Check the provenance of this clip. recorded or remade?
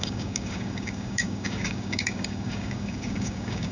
remade